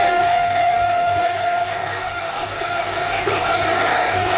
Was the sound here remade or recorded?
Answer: remade